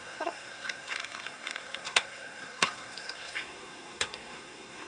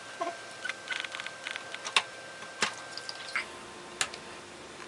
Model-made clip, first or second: first